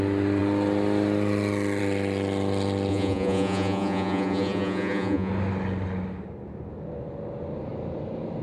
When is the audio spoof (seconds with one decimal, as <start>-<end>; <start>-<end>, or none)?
2.9-5.3